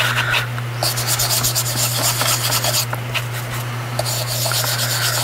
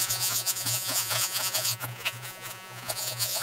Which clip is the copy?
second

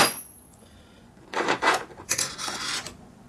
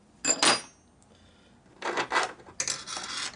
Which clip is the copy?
first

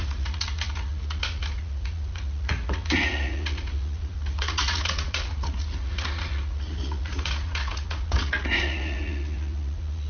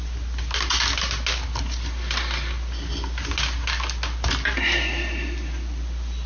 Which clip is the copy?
first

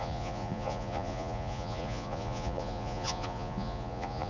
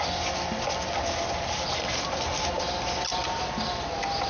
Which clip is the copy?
first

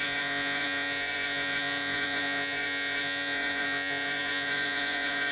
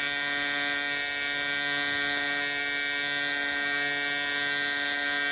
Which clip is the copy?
first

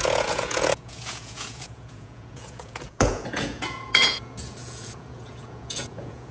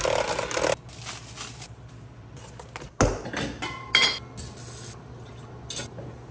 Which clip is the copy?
first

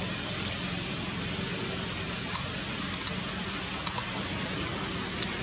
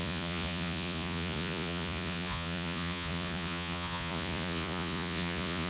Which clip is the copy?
second